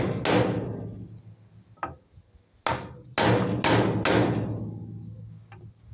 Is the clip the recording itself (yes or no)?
yes